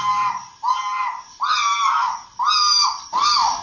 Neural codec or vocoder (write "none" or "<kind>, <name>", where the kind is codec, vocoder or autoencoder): none